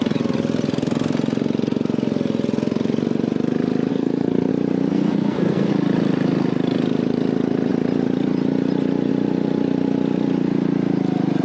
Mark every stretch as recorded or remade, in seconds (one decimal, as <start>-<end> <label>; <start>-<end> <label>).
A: 0.0-3.9 recorded; 3.9-4.5 remade; 4.5-4.9 recorded; 4.9-5.7 remade; 5.7-11.4 recorded